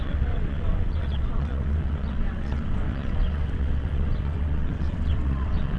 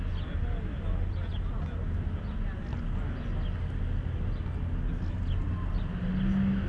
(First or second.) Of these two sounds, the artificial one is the first